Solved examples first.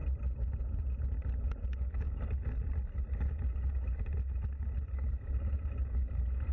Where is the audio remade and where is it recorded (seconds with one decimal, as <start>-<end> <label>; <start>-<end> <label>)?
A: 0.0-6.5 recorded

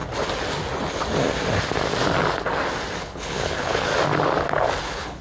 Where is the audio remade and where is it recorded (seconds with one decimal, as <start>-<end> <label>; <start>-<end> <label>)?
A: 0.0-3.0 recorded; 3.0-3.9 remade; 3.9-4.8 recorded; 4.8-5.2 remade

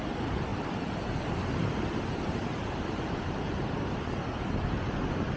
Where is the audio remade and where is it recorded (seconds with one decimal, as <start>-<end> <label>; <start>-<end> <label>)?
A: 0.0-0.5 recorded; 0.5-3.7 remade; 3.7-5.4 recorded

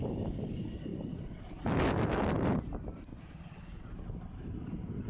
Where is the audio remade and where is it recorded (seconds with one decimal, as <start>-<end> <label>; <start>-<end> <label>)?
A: 0.0-5.1 recorded

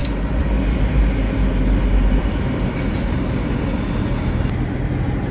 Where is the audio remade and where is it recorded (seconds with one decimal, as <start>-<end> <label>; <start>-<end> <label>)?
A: 0.0-5.3 recorded

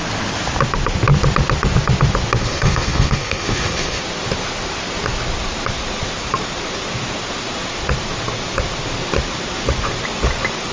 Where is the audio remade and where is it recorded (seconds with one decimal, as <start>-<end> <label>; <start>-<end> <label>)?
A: 0.0-2.4 recorded; 2.4-4.0 remade; 4.0-10.7 recorded

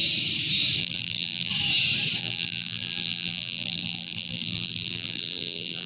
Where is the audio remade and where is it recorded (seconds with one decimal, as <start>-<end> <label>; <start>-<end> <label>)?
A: 0.0-0.8 recorded; 0.8-1.5 remade; 1.5-2.2 recorded; 2.2-5.9 remade